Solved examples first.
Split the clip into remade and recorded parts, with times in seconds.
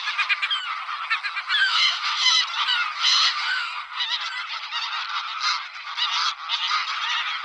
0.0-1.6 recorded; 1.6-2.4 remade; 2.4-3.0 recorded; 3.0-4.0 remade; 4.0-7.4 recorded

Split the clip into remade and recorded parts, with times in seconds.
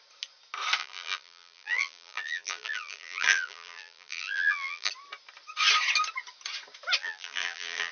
0.0-0.8 recorded; 0.8-4.9 remade; 4.9-7.0 recorded; 7.0-7.9 remade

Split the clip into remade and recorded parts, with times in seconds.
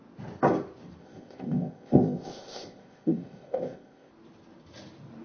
0.0-1.0 recorded; 1.0-4.1 remade; 4.1-5.2 recorded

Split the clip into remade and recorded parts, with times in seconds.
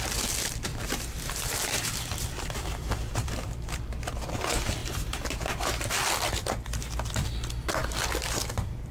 0.0-0.7 recorded; 0.7-4.3 remade; 4.3-4.8 recorded; 4.8-5.6 remade; 5.6-8.9 recorded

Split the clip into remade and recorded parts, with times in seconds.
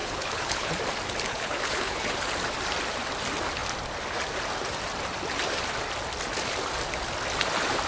0.0-0.7 remade; 0.7-1.3 recorded; 1.3-2.1 remade; 2.1-7.9 recorded